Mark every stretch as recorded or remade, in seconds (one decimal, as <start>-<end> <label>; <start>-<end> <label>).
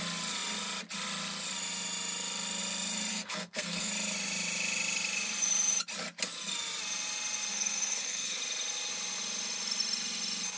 0.0-3.1 recorded; 3.1-3.9 remade; 3.9-7.5 recorded; 7.5-8.4 remade; 8.4-10.6 recorded